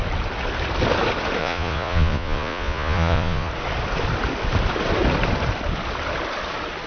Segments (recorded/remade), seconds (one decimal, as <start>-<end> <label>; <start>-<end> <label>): 0.0-1.4 recorded; 1.4-3.5 remade; 3.5-6.9 recorded